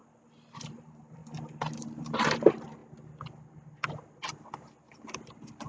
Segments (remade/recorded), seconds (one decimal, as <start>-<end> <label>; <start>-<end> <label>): 0.0-0.7 recorded; 0.7-1.2 remade; 1.2-2.0 recorded; 2.0-2.8 remade; 2.8-5.7 recorded